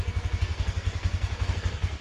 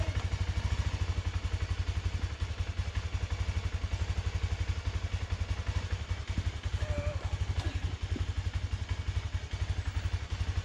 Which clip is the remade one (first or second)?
first